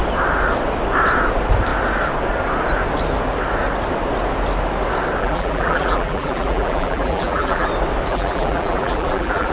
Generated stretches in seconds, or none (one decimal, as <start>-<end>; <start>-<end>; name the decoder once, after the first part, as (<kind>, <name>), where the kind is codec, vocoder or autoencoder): 5.2-7.7 (vocoder, BigVGAN v2); 8.1-9.5